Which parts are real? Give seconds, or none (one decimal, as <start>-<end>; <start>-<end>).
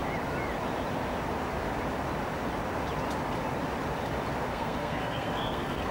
0.0-4.5